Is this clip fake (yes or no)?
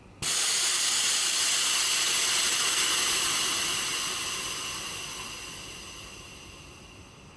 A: no